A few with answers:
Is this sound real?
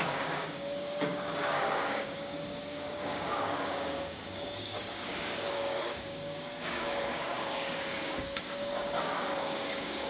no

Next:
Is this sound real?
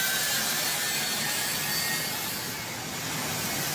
yes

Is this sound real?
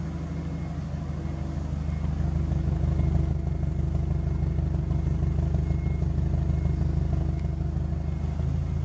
yes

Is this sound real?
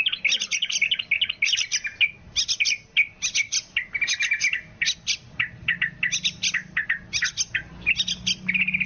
yes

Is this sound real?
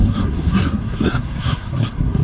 no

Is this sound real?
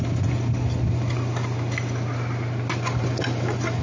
yes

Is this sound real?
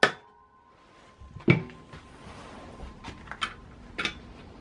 yes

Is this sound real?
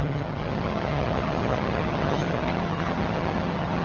no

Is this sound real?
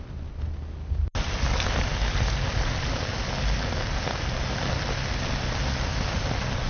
yes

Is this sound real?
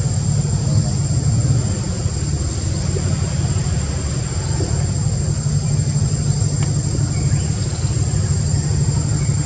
yes